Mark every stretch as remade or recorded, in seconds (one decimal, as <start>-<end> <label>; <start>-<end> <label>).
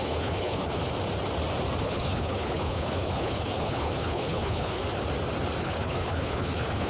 0.0-0.8 remade; 0.8-1.8 recorded; 1.8-4.8 remade; 4.8-5.6 recorded; 5.6-6.9 remade